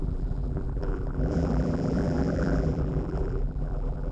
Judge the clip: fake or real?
fake